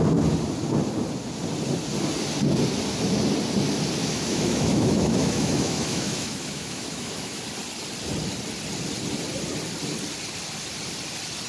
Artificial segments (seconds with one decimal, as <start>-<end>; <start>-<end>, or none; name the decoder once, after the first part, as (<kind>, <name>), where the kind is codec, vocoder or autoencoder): 4.0-7.4 (autoencoder, DAC-VAE)